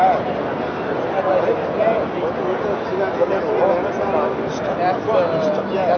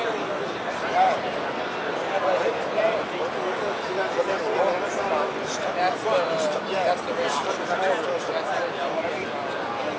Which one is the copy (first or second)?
second